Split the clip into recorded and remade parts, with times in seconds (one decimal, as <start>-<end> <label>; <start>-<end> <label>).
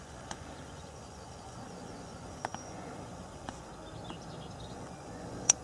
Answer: 0.0-3.7 remade; 3.7-4.6 recorded; 4.6-5.6 remade